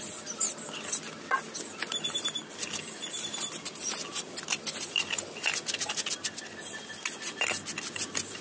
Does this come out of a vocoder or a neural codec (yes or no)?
no